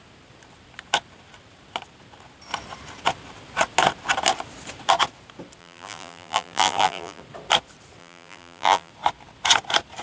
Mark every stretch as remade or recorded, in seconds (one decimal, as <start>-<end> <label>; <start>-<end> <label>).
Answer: 0.0-5.6 recorded; 5.6-7.2 remade; 7.2-8.0 recorded; 8.0-8.9 remade; 8.9-10.0 recorded